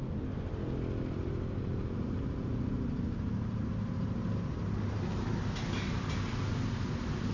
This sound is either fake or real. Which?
real